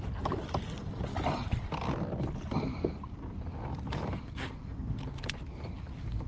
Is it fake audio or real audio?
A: real